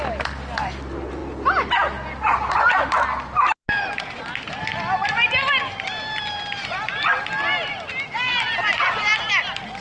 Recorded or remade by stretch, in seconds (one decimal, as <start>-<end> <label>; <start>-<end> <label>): 0.0-9.8 recorded